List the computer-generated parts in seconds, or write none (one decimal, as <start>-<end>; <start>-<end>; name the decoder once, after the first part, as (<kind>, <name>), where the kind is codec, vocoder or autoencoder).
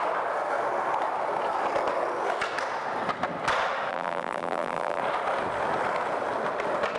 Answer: 3.9-5.0 (vocoder, BigVGAN v2)